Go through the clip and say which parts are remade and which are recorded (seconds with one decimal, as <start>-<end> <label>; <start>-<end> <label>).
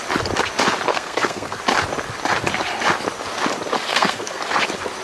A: 0.0-0.9 recorded; 0.9-1.6 remade; 1.6-3.9 recorded; 3.9-4.4 remade; 4.4-5.0 recorded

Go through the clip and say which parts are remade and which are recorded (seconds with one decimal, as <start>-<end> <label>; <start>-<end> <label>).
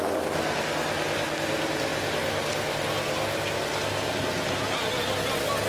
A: 0.0-5.7 recorded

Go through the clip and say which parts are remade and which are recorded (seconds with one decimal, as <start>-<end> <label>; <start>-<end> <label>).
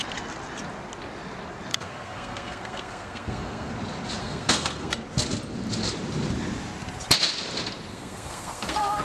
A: 0.0-1.7 recorded; 1.7-3.7 remade; 3.7-4.2 recorded; 4.2-4.9 remade; 4.9-7.9 recorded; 7.9-9.0 remade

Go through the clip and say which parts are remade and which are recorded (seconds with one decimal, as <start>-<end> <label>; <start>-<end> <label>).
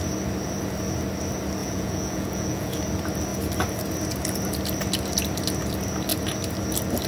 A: 0.0-1.6 recorded; 1.6-2.8 remade; 2.8-7.1 recorded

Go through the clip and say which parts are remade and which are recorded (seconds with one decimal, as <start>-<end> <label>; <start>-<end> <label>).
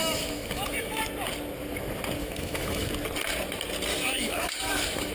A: 0.0-1.0 remade; 1.0-2.2 recorded; 2.2-2.9 remade; 2.9-3.9 recorded; 3.9-5.1 remade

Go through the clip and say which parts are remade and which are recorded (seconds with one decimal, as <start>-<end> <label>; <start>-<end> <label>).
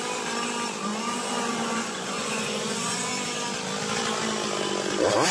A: 0.0-0.9 recorded; 0.9-3.1 remade; 3.1-5.3 recorded